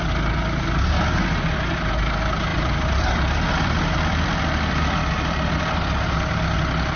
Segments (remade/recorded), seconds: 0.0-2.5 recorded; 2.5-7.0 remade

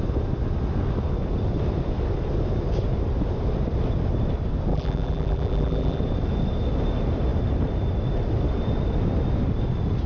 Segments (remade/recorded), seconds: 0.0-4.7 recorded; 4.7-6.0 remade; 6.0-10.1 recorded